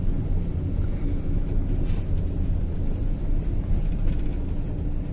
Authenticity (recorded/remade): recorded